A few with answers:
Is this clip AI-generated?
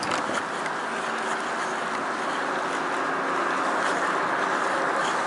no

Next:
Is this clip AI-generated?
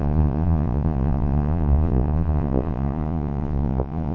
yes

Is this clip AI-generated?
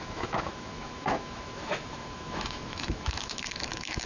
yes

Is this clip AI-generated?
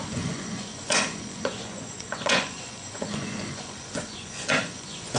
yes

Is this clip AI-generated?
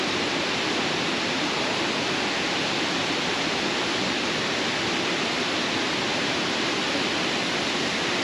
no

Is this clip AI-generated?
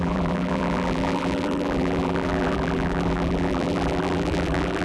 yes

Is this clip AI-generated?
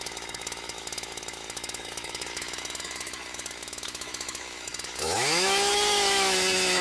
yes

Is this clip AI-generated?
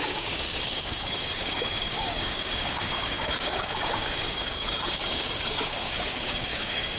yes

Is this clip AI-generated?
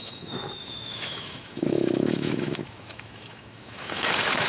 yes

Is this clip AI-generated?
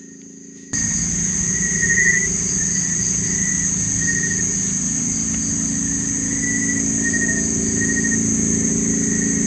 no